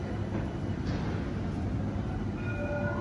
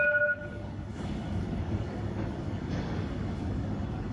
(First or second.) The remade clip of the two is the second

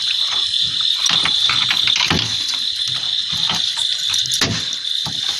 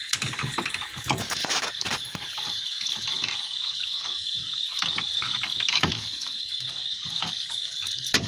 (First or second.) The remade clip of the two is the second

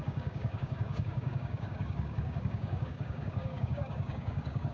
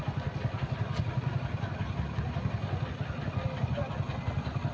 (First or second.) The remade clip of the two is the first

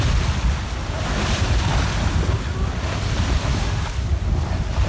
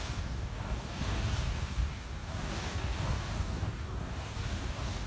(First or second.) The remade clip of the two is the second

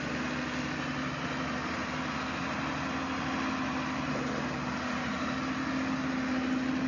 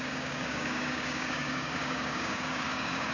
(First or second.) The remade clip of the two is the second